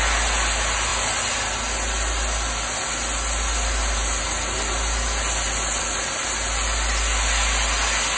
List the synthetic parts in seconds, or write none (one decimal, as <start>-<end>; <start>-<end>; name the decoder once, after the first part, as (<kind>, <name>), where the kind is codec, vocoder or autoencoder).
none